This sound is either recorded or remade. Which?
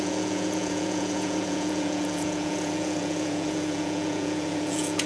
remade